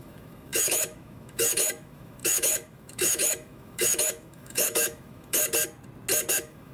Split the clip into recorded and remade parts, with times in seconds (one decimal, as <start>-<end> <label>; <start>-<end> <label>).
0.0-5.4 remade; 5.4-6.3 recorded; 6.3-6.7 remade